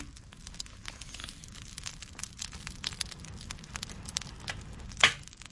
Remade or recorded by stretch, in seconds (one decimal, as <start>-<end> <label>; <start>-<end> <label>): 0.0-5.5 recorded